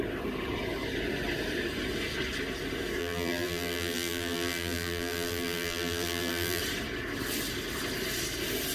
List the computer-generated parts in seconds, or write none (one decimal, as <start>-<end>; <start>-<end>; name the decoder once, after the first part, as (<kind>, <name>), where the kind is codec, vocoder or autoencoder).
3.0-6.6 (vocoder, BigVGAN v2)